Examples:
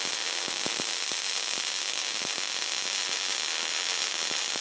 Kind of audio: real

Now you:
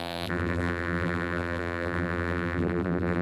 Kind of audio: fake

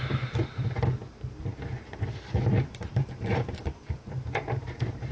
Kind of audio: fake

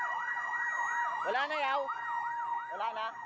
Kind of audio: real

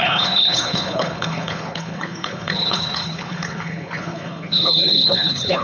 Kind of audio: fake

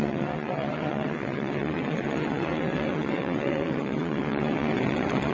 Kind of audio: fake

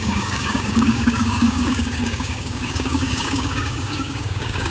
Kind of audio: fake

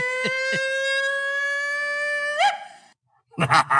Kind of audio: real